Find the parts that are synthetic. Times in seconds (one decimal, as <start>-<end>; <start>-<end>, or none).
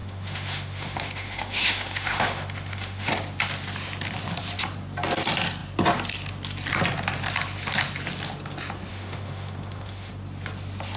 0.0-3.1; 8.9-10.1